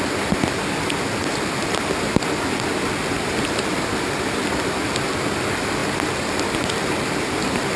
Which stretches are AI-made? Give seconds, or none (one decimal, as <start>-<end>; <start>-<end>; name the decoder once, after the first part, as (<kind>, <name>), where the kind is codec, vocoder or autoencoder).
none

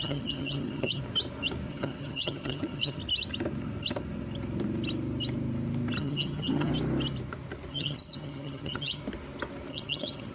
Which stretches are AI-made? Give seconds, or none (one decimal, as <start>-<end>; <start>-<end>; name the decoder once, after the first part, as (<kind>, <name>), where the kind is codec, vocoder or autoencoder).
0.0-1.0 (vocoder, HiFi-GAN); 1.7-3.0; 6.0-6.7; 7.7-9.0; 9.7-10.3

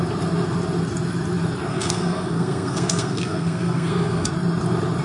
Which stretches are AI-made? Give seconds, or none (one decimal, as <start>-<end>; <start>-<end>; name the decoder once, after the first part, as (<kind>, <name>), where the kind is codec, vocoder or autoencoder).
1.7-4.3 (codec, SNAC)

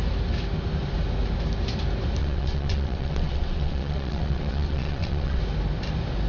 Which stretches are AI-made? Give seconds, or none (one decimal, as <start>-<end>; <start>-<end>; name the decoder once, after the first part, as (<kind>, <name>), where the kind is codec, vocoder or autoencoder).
2.2-5.4 (vocoder, WaveNeXt)

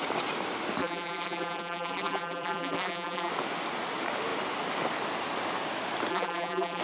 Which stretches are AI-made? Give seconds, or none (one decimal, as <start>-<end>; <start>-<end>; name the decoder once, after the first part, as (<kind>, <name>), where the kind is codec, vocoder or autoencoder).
0.8-3.3 (vocoder, BigVGAN v2); 6.1-6.8

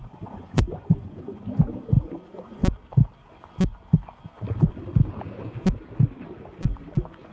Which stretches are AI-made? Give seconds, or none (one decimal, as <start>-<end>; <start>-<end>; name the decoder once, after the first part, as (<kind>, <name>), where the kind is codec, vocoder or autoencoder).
0.0-1.4 (vocoder, Vocos); 2.0-2.6

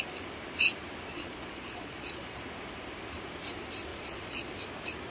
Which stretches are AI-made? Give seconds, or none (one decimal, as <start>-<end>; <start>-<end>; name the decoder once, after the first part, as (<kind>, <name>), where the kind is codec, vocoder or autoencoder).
1.1-2.4 (vocoder, Vocos); 3.9-4.5